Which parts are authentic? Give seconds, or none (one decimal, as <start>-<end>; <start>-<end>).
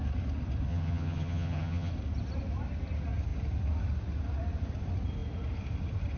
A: 0.0-0.7; 1.9-6.2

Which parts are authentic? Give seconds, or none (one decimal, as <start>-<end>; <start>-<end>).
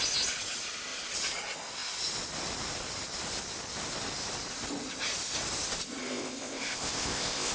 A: 0.0-6.0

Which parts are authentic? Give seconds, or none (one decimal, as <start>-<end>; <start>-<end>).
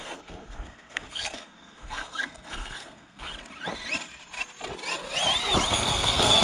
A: 3.3-5.7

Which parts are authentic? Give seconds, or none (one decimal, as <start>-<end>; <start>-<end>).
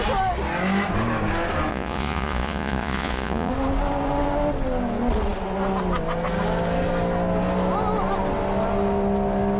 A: 0.0-1.7; 3.5-9.6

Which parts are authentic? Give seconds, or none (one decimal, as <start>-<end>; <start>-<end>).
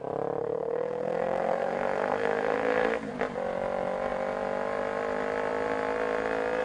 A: 0.0-0.4; 3.1-6.6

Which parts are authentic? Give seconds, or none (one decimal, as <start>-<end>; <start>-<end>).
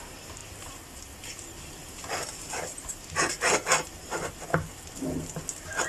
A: 0.0-5.9